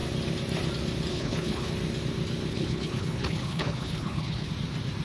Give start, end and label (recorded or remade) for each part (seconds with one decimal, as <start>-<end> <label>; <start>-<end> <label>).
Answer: 0.0-1.1 recorded; 1.1-1.7 remade; 1.7-2.5 recorded; 2.5-4.5 remade; 4.5-5.0 recorded